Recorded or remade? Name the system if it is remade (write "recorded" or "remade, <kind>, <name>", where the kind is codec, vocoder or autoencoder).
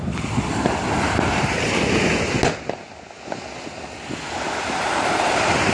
recorded